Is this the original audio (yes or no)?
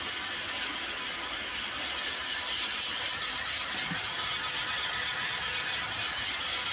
yes